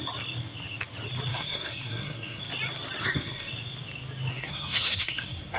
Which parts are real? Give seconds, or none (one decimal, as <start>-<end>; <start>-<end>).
0.0-1.3; 2.4-3.0; 3.5-4.3